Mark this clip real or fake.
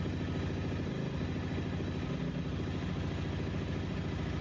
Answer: real